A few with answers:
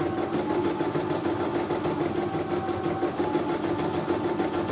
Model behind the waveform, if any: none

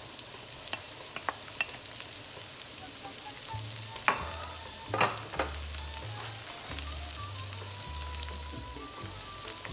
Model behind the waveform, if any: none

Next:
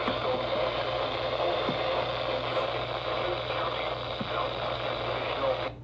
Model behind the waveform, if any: none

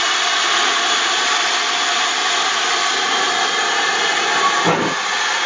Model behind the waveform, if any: none